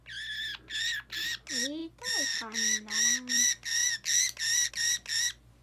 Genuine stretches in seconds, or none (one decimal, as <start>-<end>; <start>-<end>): 0.0-5.6